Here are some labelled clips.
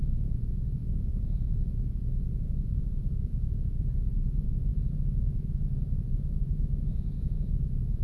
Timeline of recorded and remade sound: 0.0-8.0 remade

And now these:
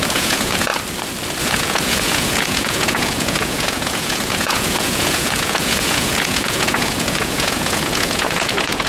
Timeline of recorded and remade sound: 0.0-0.7 remade; 0.7-1.4 recorded; 1.4-8.9 remade

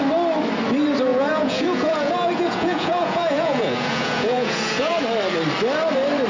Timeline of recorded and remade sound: 0.0-1.1 recorded; 1.1-4.9 remade; 4.9-6.3 recorded

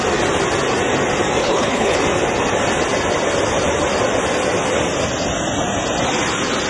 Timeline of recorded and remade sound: 0.0-1.4 recorded; 1.4-2.0 remade; 2.0-6.7 recorded

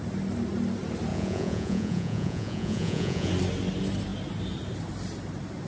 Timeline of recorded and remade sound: 0.0-1.1 recorded; 1.1-3.3 remade; 3.3-5.7 recorded

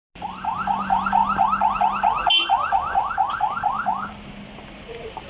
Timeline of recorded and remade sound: 0.0-5.3 recorded